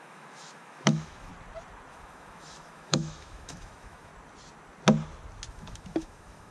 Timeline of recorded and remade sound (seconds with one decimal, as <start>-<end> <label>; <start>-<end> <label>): 0.0-1.3 remade; 1.3-1.9 recorded; 1.9-4.1 remade; 4.1-5.5 recorded; 5.5-6.5 remade